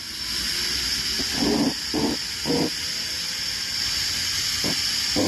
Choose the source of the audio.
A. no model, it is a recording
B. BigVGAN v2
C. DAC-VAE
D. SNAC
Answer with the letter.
A